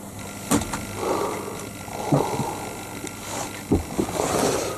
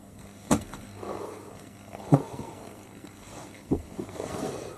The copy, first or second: second